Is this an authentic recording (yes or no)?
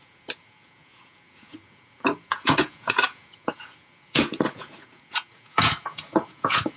no